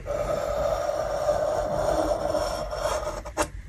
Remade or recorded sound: remade